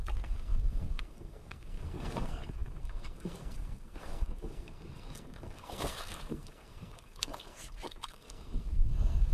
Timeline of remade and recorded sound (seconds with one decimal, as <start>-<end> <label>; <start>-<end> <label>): 0.0-9.3 remade